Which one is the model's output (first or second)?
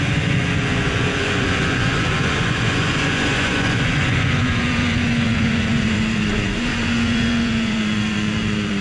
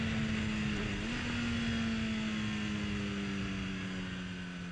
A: first